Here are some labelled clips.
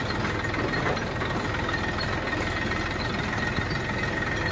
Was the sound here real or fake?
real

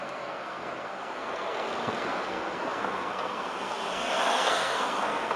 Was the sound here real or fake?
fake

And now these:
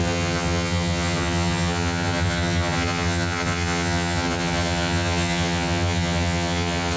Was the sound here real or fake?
fake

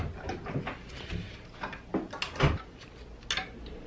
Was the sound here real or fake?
real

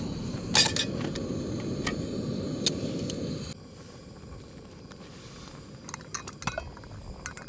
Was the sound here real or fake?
real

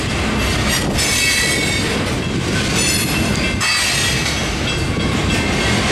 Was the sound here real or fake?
real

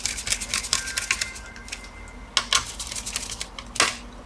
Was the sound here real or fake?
real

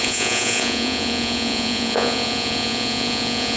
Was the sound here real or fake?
fake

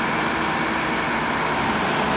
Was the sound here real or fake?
real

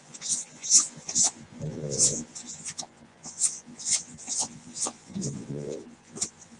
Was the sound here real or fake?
fake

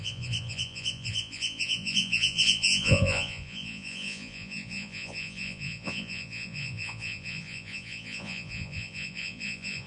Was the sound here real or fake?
fake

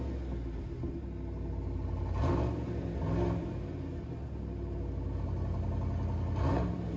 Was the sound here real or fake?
real